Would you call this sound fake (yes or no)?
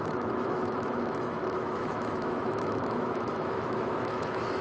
yes